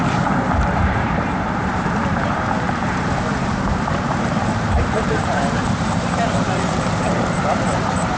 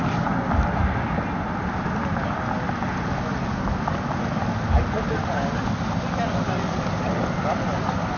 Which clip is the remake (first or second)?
first